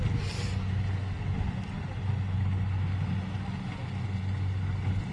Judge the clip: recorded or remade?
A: recorded